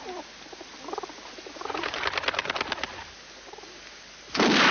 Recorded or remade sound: recorded